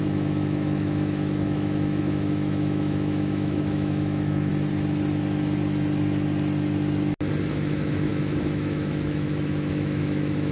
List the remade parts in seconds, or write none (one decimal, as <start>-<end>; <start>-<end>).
0.0-4.5; 7.5-10.5